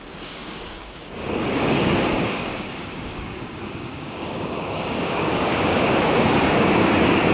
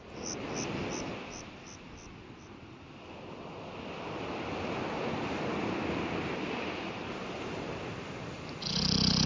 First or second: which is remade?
first